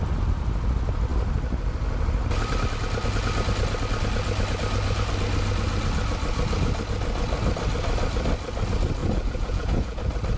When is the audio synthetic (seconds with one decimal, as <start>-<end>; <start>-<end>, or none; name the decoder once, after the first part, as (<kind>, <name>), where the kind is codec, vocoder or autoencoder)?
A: 9.0-10.0 (vocoder, Vocos)